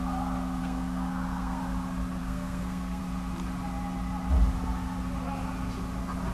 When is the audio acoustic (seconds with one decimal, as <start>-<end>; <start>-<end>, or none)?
0.0-0.6; 1.6-2.2; 3.0-6.3